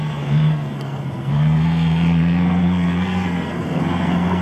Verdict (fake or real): fake